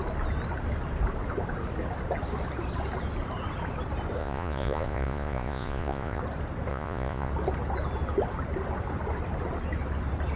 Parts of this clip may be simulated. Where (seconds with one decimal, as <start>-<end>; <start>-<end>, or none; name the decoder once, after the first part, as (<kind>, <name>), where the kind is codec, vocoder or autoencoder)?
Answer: 4.2-6.2 (vocoder, Vocos); 6.7-7.3